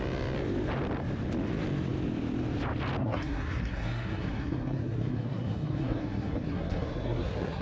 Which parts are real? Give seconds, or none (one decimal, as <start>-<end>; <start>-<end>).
0.0-3.0